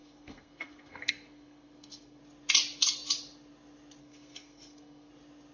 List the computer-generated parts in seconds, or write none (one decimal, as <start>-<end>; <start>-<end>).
0.0-2.2; 4.0-5.1